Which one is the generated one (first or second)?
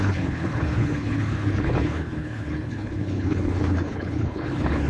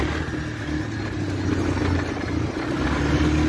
first